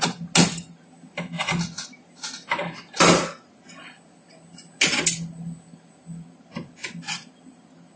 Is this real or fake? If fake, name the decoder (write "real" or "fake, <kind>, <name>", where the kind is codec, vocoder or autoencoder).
real